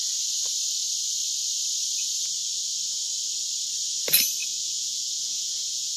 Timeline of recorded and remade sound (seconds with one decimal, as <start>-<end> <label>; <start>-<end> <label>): 0.0-4.4 recorded; 4.4-6.0 remade